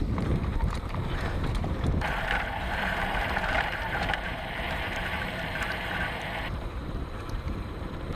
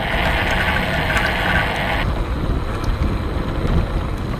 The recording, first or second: second